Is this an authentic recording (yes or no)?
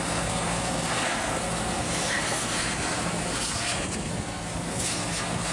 no